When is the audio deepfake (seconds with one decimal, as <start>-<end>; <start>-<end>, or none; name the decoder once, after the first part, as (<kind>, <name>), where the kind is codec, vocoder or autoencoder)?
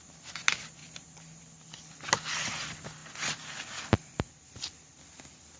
0.8-1.4 (vocoder, BigVGAN v2)